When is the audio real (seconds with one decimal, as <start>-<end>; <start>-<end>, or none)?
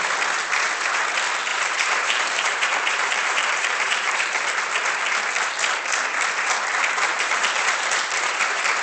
0.0-1.5; 4.5-7.1